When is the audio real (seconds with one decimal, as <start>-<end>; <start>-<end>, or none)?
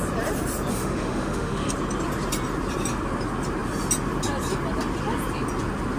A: 0.0-0.7; 1.7-6.0